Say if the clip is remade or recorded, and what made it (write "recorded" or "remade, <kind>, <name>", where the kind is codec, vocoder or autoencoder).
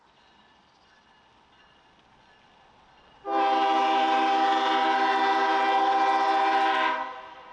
recorded